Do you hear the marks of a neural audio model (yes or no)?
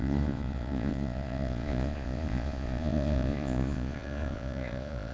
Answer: yes